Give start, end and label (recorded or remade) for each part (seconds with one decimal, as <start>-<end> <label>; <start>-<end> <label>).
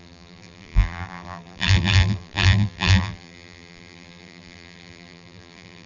0.0-5.9 remade